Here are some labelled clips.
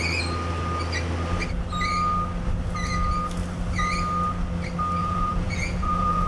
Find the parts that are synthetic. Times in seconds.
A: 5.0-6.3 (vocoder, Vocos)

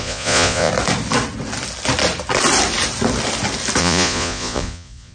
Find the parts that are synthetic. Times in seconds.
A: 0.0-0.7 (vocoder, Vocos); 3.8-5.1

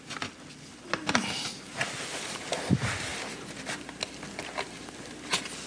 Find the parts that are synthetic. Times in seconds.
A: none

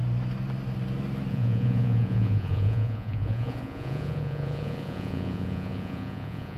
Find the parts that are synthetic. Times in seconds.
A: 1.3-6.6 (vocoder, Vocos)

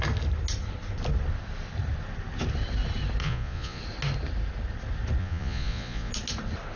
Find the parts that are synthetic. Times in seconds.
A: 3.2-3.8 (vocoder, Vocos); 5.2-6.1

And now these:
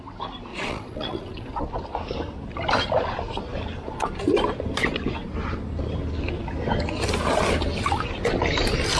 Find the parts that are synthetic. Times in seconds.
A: 0.5-1.6 (vocoder, Vocos)

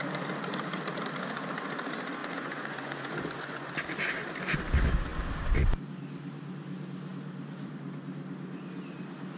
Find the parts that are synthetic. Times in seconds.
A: 2.2-3.7 (vocoder, Vocos)

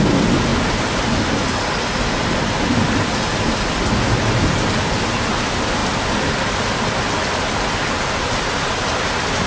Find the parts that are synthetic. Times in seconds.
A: none